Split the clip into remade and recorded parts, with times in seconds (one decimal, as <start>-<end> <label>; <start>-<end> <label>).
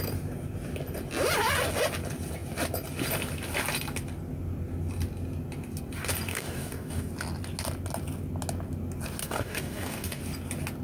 0.0-6.3 recorded; 6.3-7.1 remade; 7.1-9.2 recorded; 9.2-10.2 remade; 10.2-10.8 recorded